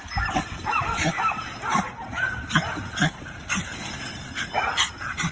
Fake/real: fake